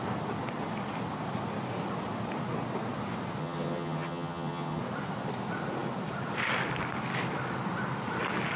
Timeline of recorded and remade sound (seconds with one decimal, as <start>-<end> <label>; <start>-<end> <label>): 0.0-3.4 recorded; 3.4-4.8 remade; 4.8-8.6 recorded